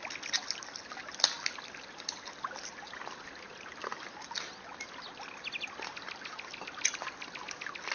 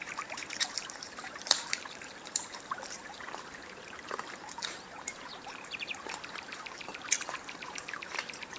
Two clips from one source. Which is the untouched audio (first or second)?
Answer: first